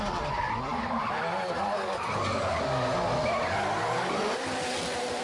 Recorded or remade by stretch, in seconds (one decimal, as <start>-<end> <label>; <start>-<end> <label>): 0.0-5.2 recorded